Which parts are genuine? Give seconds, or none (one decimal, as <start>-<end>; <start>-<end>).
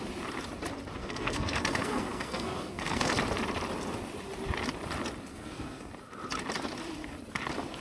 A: 0.0-1.0; 3.1-5.3; 5.9-7.8